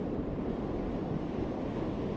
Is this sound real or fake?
real